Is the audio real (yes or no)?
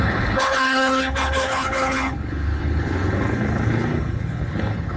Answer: no